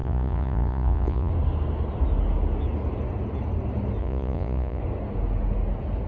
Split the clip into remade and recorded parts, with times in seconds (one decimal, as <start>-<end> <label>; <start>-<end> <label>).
0.0-1.3 remade; 1.3-4.0 recorded; 4.0-4.8 remade; 4.8-6.1 recorded